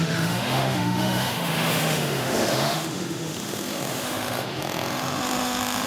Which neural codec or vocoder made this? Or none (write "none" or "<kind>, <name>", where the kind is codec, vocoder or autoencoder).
autoencoder, DAC-VAE